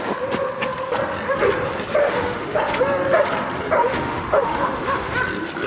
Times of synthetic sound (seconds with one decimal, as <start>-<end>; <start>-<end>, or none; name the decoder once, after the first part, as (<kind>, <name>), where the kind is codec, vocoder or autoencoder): 2.0-2.6 (autoencoder, DAC-VAE); 3.8-5.1